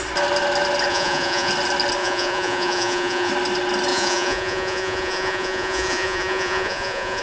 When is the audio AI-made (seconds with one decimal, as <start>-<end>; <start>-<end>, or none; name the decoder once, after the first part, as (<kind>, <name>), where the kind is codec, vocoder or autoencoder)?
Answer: 0.9-1.5 (vocoder, Vocos); 2.0-3.3; 3.9-7.2

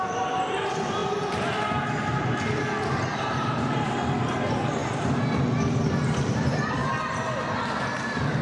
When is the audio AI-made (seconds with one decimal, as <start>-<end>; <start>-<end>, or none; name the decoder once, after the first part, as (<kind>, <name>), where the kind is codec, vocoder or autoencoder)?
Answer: none

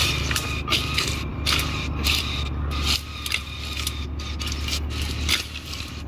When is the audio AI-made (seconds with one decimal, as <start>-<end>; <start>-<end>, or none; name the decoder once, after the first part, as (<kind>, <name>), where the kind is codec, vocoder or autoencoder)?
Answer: none

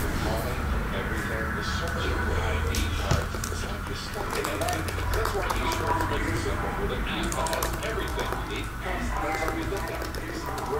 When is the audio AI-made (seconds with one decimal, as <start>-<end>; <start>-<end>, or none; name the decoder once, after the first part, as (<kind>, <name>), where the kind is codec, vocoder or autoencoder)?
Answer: 0.0-8.1 (vocoder, BigVGAN v2); 8.6-10.8

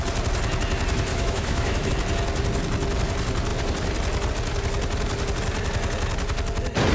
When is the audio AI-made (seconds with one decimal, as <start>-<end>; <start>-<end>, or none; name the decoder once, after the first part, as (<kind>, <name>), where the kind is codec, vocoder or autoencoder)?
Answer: 1.1-1.9 (autoencoder, DAC-VAE)

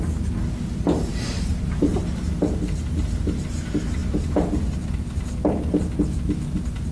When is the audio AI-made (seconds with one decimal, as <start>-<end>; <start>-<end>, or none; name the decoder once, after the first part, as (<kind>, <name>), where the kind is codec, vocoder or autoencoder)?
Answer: 1.1-2.0 (vocoder, BigVGAN v2)

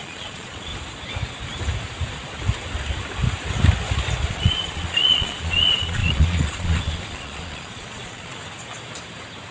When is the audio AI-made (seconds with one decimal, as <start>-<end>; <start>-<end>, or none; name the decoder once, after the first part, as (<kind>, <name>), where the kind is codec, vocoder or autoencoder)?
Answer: 0.0-0.7 (vocoder, Vocos); 4.3-8.4

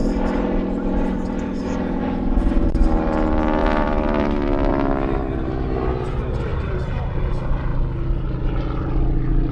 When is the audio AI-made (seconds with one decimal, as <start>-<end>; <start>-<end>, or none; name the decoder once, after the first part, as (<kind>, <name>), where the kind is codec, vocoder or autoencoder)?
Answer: 3.6-4.7 (vocoder, BigVGAN v2)